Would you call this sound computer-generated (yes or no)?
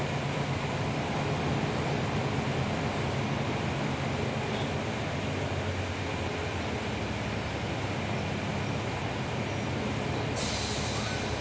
no